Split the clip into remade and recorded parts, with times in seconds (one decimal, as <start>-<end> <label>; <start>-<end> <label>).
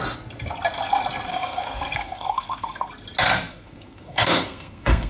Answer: 0.0-1.3 recorded; 1.3-2.9 remade; 2.9-3.5 recorded; 3.5-5.1 remade